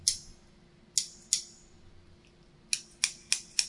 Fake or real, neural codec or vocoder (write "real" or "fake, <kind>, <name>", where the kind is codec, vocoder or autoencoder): real